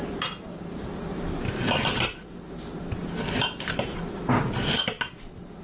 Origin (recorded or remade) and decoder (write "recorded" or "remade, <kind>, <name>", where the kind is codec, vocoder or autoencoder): recorded